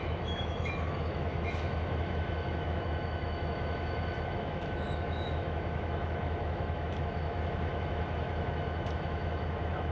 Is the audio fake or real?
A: fake